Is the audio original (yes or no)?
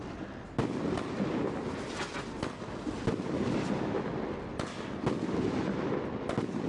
yes